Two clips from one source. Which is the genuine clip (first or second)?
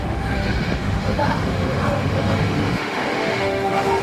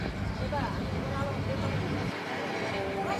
second